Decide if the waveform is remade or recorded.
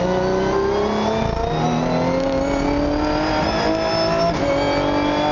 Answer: recorded